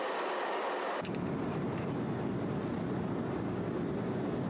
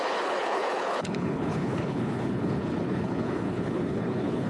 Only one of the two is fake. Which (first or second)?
second